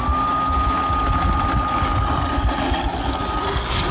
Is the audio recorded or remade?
recorded